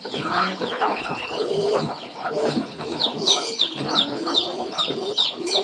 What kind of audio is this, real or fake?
fake